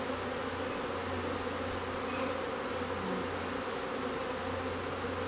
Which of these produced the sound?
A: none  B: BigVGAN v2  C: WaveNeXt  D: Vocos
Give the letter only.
A